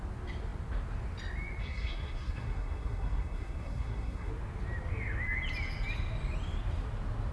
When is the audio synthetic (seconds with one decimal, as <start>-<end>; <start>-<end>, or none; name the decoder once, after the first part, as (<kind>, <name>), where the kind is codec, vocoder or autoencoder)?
1.6-4.3 (codec, SNAC)